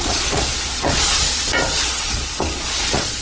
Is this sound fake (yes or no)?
yes